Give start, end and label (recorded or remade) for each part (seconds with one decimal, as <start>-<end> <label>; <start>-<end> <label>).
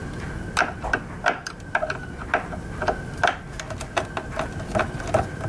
0.0-5.5 recorded